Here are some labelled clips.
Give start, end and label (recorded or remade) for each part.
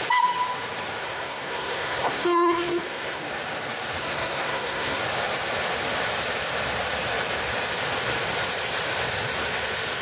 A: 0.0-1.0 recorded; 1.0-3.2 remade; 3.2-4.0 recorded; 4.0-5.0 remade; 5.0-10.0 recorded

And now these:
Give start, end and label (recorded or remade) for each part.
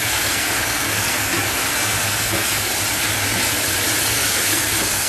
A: 0.0-2.7 remade; 2.7-4.1 recorded; 4.1-5.1 remade